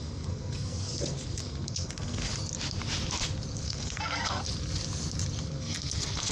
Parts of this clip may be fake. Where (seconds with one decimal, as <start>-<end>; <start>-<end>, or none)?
0.0-2.3; 3.5-4.4; 5.4-6.3